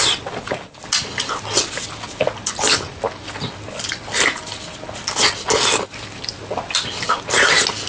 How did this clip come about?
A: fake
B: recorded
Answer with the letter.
B